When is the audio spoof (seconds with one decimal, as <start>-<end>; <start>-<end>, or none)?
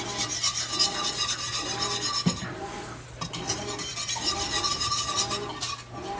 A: none